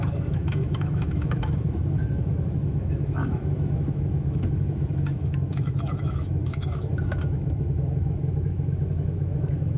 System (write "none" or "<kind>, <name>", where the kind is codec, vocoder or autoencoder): autoencoder, DAC-VAE